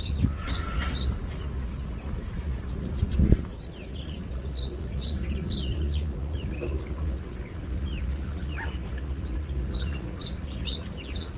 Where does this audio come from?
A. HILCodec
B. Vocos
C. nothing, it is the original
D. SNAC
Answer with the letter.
B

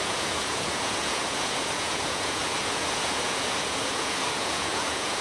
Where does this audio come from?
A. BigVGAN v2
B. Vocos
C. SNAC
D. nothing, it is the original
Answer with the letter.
B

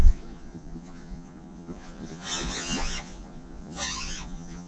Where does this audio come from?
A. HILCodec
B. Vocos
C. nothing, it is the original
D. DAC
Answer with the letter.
B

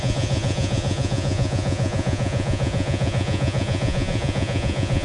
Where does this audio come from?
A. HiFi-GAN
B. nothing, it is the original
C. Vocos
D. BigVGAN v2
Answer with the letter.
C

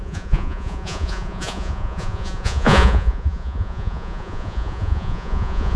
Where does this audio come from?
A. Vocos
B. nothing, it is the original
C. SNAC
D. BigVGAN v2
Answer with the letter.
A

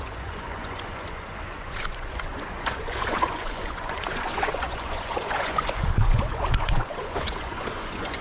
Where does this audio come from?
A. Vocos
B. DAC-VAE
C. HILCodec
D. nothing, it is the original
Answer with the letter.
A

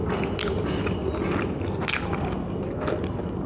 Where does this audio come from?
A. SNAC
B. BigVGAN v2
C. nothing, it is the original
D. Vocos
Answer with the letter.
C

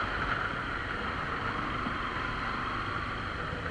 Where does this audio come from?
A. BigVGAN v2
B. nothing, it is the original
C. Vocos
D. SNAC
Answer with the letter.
B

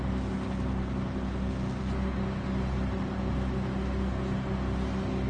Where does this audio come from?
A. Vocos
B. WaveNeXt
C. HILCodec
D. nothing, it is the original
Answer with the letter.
D